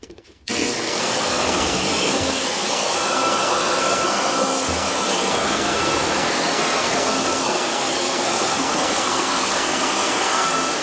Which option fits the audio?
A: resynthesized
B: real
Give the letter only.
A